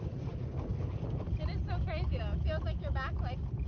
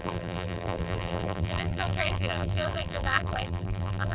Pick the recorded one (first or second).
first